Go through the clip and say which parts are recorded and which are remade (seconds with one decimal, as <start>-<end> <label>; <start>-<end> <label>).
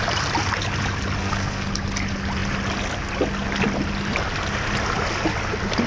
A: 0.0-1.2 recorded; 1.2-1.7 remade; 1.7-5.9 recorded